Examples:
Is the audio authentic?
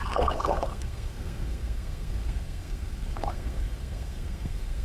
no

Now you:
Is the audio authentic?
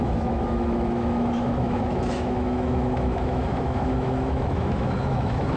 no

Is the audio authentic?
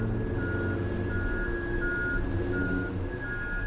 yes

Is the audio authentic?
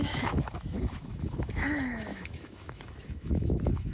no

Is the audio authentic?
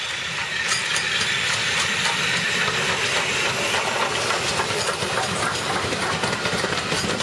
yes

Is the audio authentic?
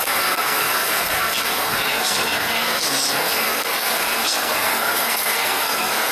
no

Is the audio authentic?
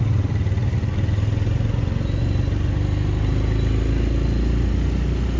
yes